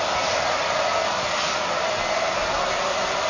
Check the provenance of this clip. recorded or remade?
recorded